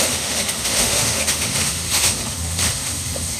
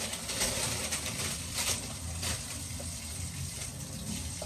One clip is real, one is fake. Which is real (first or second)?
second